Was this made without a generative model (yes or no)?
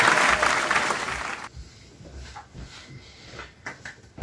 yes